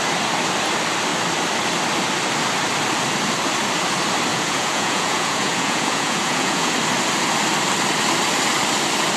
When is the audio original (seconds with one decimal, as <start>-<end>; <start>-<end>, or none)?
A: 0.0-4.3; 6.7-9.2